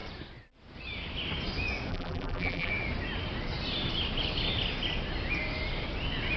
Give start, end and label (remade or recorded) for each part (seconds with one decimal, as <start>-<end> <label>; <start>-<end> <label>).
0.0-1.9 recorded; 1.9-2.7 remade; 2.7-6.4 recorded